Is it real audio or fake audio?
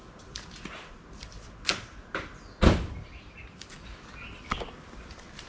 real